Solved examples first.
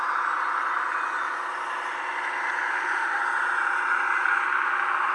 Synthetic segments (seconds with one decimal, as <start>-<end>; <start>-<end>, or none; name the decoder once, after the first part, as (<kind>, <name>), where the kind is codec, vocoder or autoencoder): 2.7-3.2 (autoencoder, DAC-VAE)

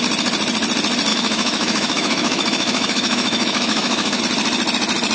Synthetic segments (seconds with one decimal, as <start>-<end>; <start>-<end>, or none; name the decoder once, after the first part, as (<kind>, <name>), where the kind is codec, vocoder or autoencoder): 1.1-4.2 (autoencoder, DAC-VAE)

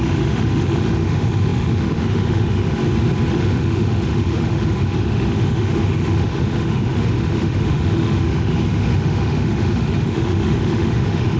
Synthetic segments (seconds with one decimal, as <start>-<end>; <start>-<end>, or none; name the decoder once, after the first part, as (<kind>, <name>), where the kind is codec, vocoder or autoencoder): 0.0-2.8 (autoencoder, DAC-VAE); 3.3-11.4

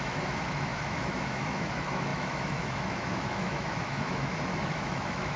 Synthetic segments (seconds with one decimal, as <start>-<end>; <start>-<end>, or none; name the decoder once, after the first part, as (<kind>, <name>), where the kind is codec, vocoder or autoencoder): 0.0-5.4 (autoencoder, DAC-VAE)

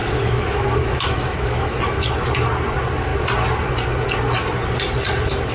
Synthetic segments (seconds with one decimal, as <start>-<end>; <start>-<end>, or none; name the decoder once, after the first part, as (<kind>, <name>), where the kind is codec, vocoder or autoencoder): 0.0-2.0 (autoencoder, DAC-VAE)

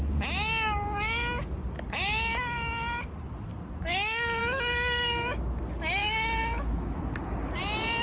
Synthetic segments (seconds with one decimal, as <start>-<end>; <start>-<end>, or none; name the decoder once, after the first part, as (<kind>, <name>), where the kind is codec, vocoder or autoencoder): 4.4-5.6 (autoencoder, DAC-VAE); 6.0-7.0

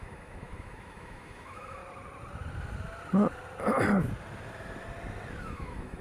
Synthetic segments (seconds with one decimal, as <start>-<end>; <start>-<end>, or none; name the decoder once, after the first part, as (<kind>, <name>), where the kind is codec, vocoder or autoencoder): 0.0-1.8 (autoencoder, DAC-VAE); 5.4-6.0

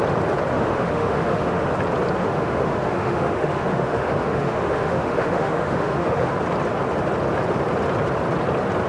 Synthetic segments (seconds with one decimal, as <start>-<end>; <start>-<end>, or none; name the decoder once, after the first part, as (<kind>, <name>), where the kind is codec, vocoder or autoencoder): 0.5-1.7 (autoencoder, DAC-VAE); 2.2-6.3